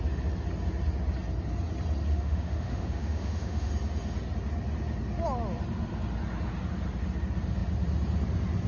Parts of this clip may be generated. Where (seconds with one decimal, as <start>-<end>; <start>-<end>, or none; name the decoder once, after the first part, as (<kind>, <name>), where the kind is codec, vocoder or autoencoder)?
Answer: 2.1-3.7 (autoencoder, DAC-VAE)